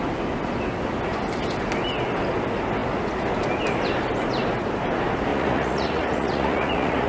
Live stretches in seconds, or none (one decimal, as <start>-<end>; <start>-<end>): 0.0-5.3